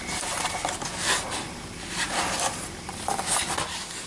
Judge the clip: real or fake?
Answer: real